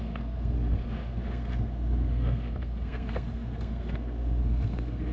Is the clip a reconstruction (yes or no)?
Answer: yes